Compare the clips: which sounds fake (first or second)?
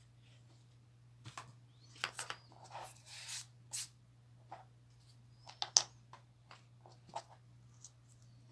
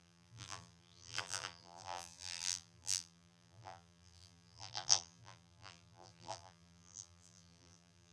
second